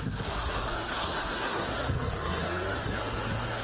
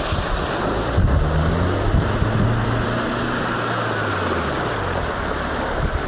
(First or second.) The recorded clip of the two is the second